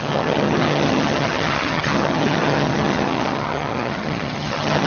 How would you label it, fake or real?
fake